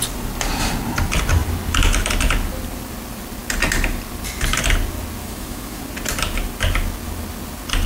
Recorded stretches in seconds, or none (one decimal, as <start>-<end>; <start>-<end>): 0.0-5.2; 5.8-7.9